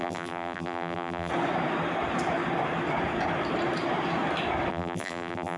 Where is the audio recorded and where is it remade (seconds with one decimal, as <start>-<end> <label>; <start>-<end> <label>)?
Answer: 0.0-1.3 remade; 1.3-4.7 recorded; 4.7-5.6 remade